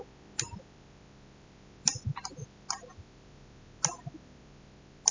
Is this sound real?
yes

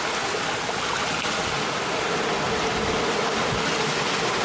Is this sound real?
yes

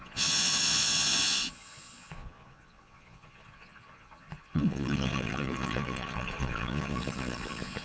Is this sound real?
no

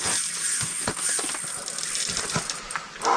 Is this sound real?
yes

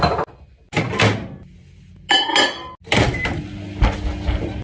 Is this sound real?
yes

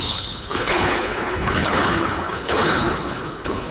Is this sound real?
no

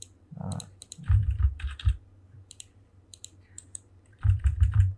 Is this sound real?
no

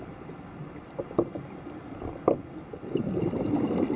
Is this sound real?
yes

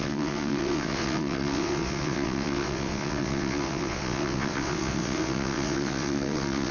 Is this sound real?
no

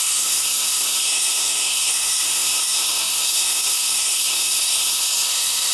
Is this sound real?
no